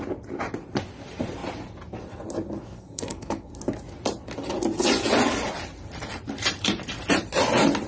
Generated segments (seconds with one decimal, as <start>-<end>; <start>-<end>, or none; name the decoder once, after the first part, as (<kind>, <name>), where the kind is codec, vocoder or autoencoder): 2.6-3.5 (codec, SNAC)